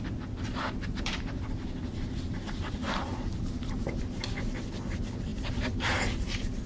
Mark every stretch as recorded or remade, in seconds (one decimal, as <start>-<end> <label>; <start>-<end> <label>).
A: 0.0-2.8 recorded; 2.8-3.4 remade; 3.4-5.3 recorded; 5.3-6.7 remade